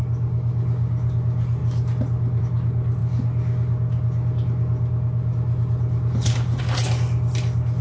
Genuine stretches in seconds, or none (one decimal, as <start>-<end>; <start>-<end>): 0.0-7.8